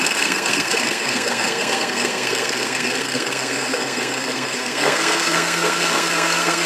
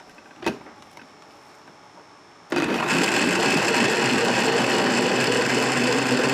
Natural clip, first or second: second